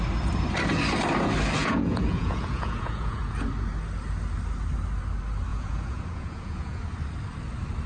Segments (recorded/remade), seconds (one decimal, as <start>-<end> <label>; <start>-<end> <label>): 0.0-1.6 recorded; 1.6-3.2 remade; 3.2-5.5 recorded; 5.5-6.8 remade; 6.8-7.9 recorded